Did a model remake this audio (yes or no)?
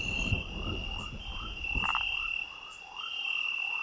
no